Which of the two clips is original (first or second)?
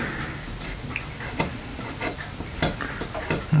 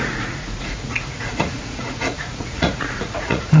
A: first